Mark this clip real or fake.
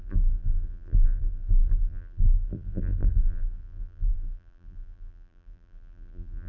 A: fake